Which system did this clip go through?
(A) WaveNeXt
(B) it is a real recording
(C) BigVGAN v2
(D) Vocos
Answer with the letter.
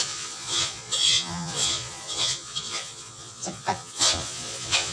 D